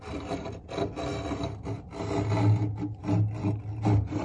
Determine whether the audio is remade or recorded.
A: recorded